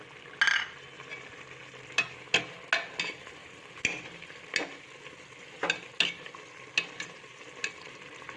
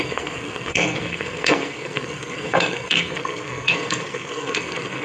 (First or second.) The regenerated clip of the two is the second